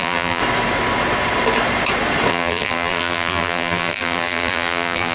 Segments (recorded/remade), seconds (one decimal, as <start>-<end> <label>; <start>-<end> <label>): 0.0-0.4 remade; 0.4-2.3 recorded; 2.3-5.1 remade